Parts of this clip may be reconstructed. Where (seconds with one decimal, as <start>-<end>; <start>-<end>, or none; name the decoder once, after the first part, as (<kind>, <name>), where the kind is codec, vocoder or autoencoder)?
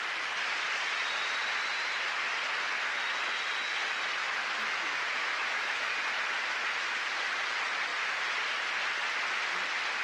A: 4.2-5.9 (autoencoder, DAC-VAE)